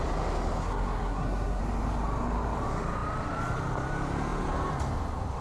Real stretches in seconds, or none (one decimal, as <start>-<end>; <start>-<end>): 0.0-0.6; 1.6-5.4